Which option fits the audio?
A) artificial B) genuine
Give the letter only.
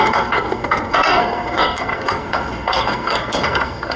A